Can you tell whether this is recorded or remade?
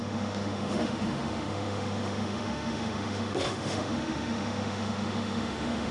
remade